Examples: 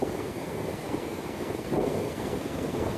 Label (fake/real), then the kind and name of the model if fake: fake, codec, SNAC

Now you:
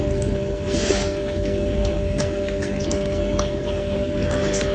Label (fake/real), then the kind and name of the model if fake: fake, codec, SNAC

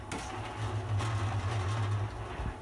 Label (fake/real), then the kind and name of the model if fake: real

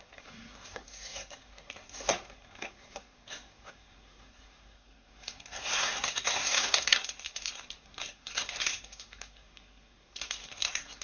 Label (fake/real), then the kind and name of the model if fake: fake, codec, SNAC